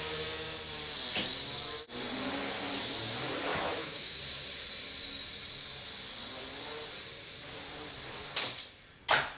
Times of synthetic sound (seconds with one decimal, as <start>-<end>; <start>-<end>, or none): 3.5-4.2